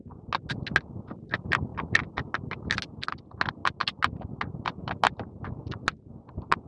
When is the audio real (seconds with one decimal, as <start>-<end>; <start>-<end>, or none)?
0.0-6.7